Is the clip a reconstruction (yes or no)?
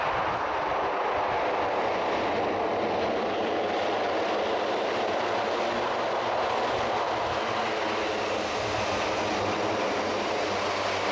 no